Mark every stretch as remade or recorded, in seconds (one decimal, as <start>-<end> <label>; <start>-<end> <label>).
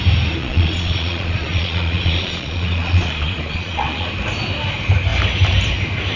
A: 0.0-0.4 recorded; 0.4-4.1 remade; 4.1-6.2 recorded